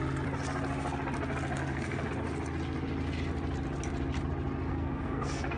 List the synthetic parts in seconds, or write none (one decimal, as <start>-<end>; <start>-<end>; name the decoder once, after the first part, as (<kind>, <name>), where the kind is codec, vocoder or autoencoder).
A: 1.6-2.1 (codec, SNAC); 4.7-5.6